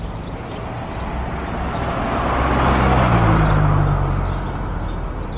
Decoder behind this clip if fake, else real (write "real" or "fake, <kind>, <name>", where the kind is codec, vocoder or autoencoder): real